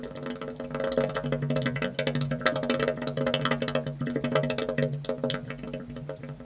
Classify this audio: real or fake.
real